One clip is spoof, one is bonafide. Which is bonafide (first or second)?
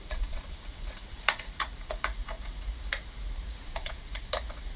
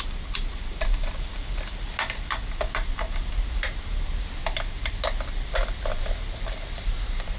second